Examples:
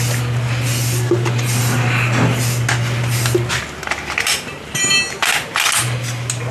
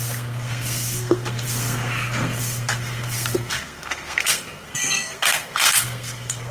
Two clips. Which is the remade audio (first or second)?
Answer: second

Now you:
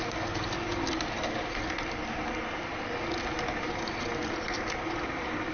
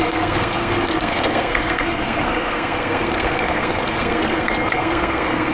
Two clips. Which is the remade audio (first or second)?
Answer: second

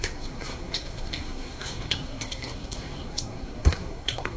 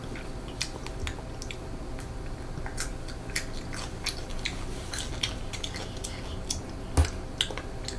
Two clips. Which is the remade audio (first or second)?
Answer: first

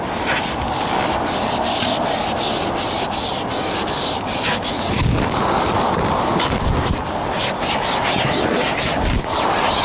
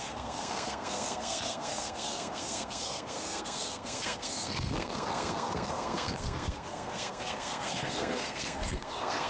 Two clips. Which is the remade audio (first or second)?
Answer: second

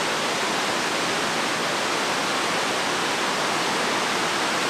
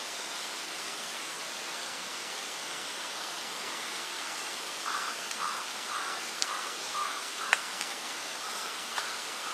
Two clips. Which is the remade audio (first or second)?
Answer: second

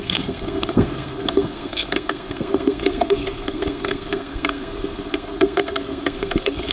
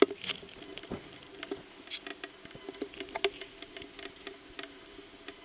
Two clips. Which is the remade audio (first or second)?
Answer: first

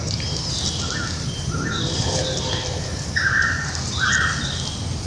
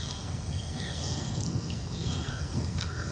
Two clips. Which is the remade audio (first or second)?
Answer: second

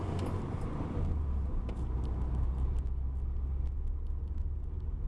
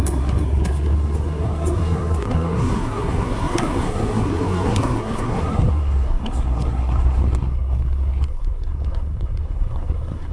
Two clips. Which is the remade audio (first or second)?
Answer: second